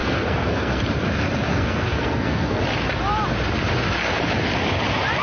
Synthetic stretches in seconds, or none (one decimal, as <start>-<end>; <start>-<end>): 0.0-0.8; 1.5-2.6